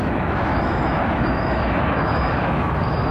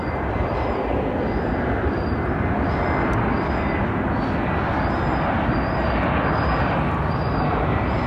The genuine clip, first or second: second